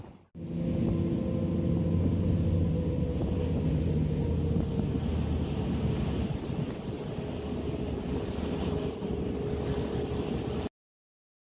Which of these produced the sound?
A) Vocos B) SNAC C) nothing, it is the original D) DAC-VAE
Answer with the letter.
C